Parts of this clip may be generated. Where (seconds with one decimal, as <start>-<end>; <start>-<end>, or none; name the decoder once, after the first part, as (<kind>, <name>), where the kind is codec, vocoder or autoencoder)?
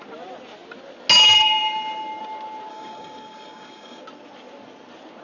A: 2.7-4.0 (codec, DAC)